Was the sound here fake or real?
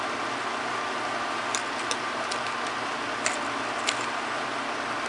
real